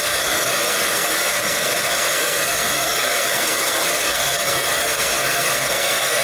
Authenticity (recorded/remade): remade